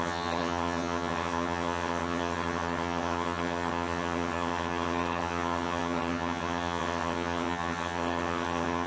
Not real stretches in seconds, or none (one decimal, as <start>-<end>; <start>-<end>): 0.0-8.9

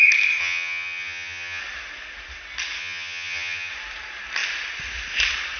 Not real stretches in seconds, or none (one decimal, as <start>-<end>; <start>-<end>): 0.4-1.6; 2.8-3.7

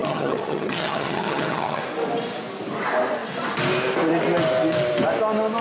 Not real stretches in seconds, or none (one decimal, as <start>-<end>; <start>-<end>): 0.0-1.8

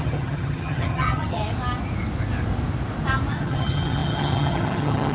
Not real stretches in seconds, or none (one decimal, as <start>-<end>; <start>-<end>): 0.0-1.4; 3.3-5.1

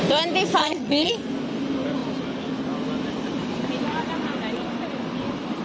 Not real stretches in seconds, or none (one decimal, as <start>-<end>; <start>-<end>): 0.6-1.1